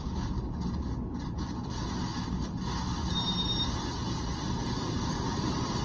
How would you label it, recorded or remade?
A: recorded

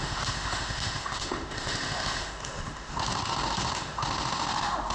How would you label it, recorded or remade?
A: remade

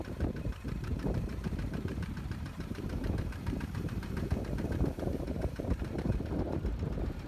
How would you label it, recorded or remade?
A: remade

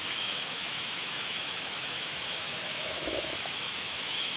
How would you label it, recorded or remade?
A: remade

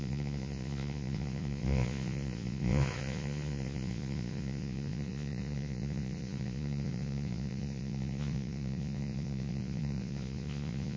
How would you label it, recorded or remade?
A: remade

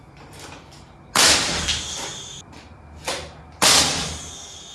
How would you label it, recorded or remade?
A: recorded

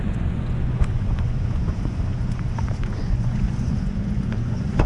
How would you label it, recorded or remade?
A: remade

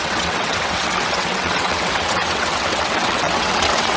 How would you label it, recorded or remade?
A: remade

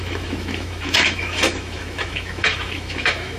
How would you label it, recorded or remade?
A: remade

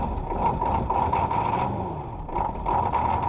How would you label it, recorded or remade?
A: recorded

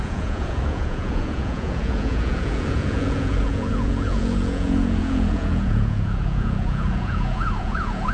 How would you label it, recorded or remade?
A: remade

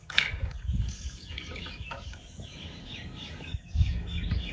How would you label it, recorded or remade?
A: remade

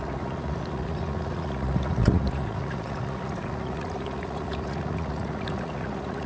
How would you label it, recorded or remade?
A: remade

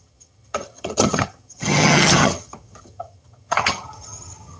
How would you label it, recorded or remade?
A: remade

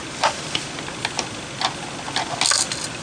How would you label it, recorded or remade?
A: recorded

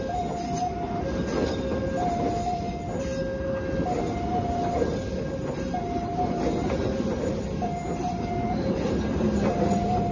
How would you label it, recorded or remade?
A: recorded